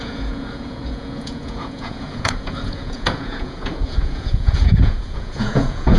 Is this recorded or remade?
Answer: remade